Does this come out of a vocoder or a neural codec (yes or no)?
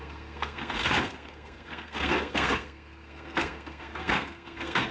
yes